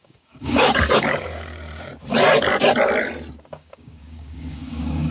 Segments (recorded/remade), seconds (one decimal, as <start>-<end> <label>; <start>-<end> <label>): 0.0-1.9 remade; 1.9-3.5 recorded; 3.5-5.1 remade